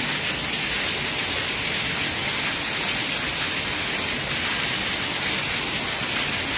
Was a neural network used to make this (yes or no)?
no